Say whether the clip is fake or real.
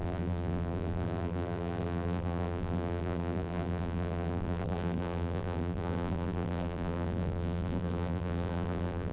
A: fake